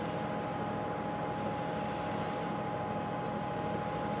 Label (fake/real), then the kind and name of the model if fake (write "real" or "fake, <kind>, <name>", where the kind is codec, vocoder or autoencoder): real